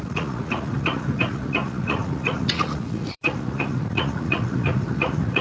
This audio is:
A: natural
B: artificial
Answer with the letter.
B